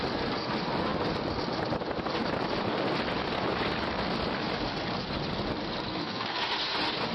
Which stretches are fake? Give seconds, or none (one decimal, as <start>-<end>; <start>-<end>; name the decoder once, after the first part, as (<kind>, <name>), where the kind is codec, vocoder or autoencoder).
5.9-6.4 (codec, SNAC)